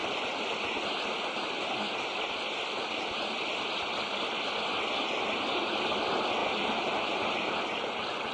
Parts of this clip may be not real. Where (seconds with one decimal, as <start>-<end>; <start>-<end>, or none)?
6.4-7.6